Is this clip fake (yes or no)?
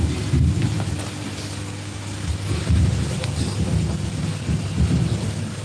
no